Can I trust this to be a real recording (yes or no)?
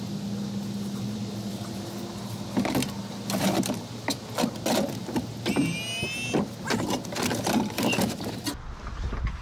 yes